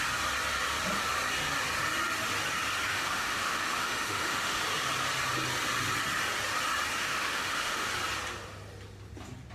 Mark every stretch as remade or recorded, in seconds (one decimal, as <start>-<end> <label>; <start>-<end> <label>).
0.0-2.9 recorded; 2.9-4.6 remade; 4.6-7.0 recorded; 7.0-7.9 remade; 7.9-9.5 recorded